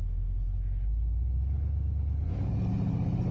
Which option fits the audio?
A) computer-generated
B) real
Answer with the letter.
B